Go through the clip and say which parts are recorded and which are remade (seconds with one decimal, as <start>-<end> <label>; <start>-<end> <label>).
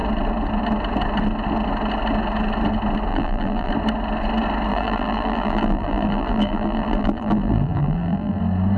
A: 0.0-3.1 recorded; 3.1-3.7 remade; 3.7-4.7 recorded; 4.7-8.4 remade; 8.4-8.8 recorded